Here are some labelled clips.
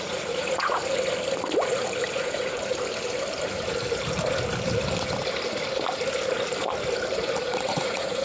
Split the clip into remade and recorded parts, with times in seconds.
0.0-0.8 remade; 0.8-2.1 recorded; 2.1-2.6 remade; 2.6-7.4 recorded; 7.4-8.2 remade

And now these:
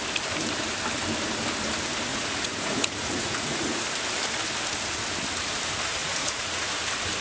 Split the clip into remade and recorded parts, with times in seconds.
0.0-2.1 recorded; 2.1-3.8 remade; 3.8-6.0 recorded; 6.0-6.7 remade; 6.7-7.2 recorded

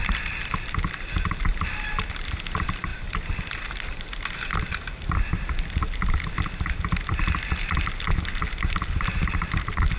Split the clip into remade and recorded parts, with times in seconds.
0.0-10.0 recorded

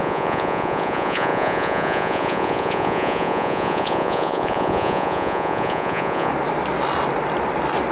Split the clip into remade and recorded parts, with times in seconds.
0.0-6.3 remade; 6.3-7.9 recorded

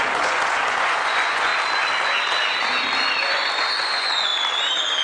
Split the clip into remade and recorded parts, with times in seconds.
0.0-1.5 remade; 1.5-3.3 recorded; 3.3-4.3 remade; 4.3-5.0 recorded

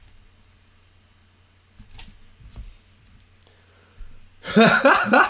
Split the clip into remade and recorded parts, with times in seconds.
0.0-5.3 recorded

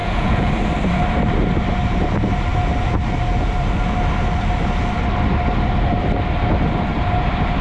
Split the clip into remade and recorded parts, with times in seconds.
0.0-0.5 remade; 0.5-7.6 recorded

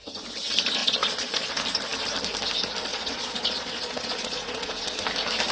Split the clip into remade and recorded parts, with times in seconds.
0.0-0.8 recorded; 0.8-1.5 remade; 1.5-2.9 recorded; 2.9-5.0 remade; 5.0-5.5 recorded